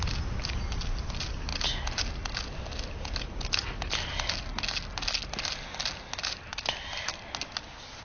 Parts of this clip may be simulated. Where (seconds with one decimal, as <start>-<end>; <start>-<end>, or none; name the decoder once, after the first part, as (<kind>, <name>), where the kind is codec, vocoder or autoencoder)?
none